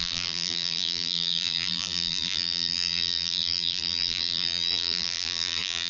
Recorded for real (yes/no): no